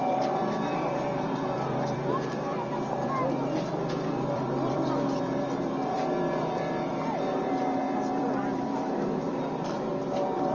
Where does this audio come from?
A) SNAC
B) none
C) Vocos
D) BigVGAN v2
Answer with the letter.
D